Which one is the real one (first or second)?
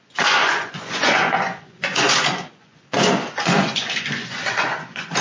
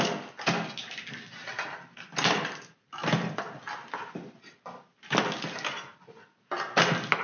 second